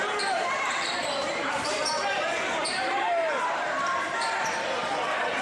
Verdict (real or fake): fake